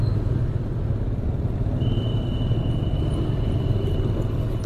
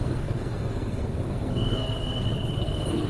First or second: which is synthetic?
second